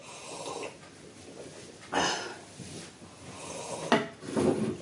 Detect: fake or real real